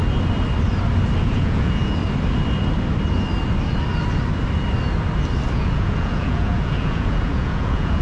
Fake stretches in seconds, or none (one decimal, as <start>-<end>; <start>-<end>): 1.2-2.0; 5.5-8.0